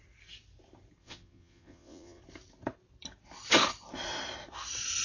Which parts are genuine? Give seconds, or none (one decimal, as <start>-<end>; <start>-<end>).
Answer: 0.0-1.0; 2.2-5.0